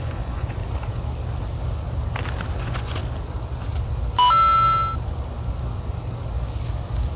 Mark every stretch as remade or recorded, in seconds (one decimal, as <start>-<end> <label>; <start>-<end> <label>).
0.0-0.6 remade; 0.6-2.6 recorded; 2.6-3.0 remade; 3.0-7.2 recorded